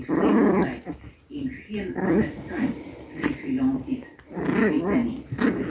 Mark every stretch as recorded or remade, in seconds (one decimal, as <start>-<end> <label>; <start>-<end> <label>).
0.0-5.7 recorded